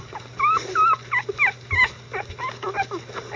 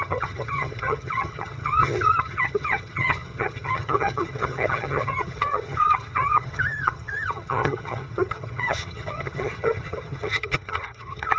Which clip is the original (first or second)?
first